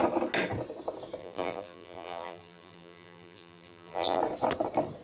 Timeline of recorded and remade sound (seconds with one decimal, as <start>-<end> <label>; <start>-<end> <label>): 0.0-1.2 recorded; 1.2-4.2 remade; 4.2-5.0 recorded